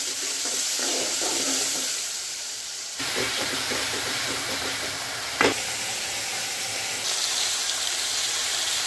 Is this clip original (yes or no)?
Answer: no